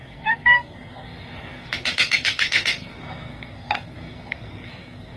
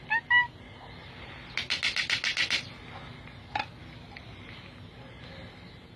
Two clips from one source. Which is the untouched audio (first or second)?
second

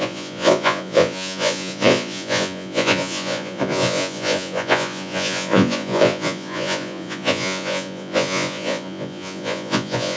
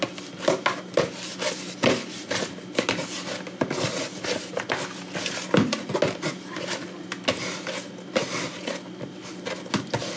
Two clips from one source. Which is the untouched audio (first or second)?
second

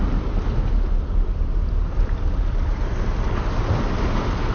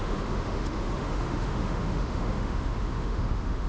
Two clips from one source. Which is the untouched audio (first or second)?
first